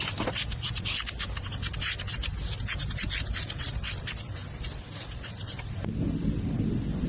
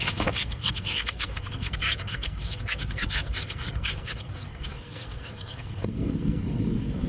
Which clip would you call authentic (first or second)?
first